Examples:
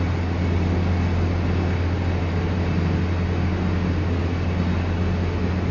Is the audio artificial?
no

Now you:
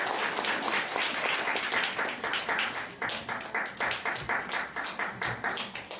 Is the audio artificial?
no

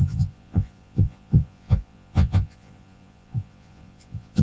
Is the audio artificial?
yes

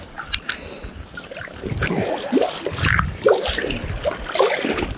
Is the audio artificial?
no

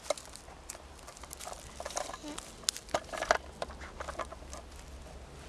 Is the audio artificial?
no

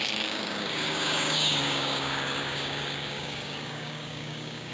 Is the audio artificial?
yes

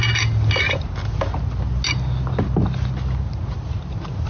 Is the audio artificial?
no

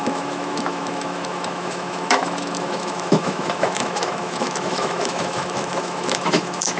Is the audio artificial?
yes